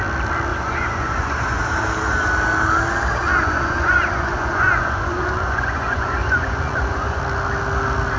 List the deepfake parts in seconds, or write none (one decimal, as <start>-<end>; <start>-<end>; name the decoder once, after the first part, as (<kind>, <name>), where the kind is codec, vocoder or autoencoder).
0.5-1.6 (vocoder, Vocos); 3.2-7.2